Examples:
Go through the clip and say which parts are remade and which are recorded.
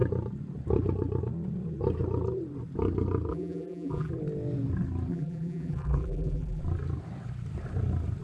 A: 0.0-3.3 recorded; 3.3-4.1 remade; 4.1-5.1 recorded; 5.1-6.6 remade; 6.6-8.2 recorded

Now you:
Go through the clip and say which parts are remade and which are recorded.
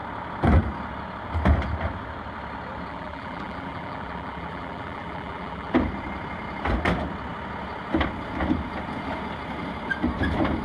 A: 0.0-2.9 recorded; 2.9-5.7 remade; 5.7-10.6 recorded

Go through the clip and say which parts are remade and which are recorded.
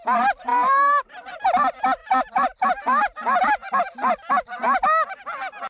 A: 0.0-0.5 recorded; 0.5-1.3 remade; 1.3-2.0 recorded; 2.0-4.3 remade; 4.3-5.7 recorded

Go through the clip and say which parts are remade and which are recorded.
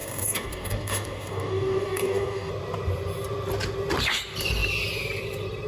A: 0.0-2.5 remade; 2.5-5.7 recorded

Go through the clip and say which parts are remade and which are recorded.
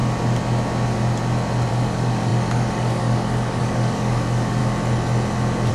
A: 0.0-1.7 recorded; 1.7-4.6 remade; 4.6-5.7 recorded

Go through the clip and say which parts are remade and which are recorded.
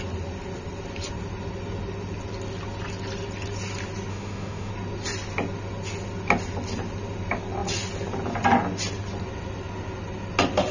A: 0.0-4.1 recorded; 4.1-4.7 remade; 4.7-10.7 recorded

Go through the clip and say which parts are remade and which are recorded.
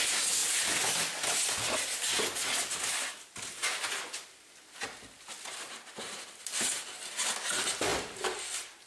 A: 0.0-8.9 recorded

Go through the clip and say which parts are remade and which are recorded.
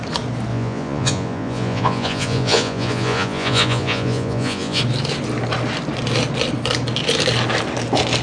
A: 0.0-0.5 recorded; 0.5-4.8 remade; 4.8-8.2 recorded